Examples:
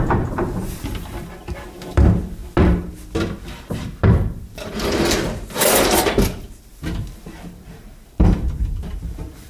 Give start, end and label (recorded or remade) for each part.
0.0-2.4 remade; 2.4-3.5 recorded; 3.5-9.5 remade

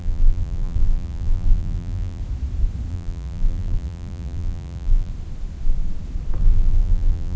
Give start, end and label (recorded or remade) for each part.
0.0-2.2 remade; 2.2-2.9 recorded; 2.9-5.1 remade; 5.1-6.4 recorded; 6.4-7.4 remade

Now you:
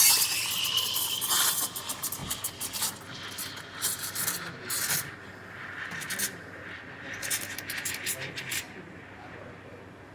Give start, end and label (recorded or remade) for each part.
0.0-8.5 recorded; 8.5-9.0 remade; 9.0-10.1 recorded